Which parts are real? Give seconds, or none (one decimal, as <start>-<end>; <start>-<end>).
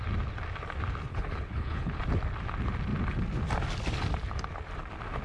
0.0-1.1; 2.0-5.2